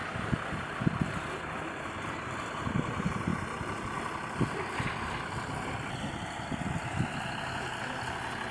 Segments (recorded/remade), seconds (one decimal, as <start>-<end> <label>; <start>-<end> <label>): 0.0-8.5 recorded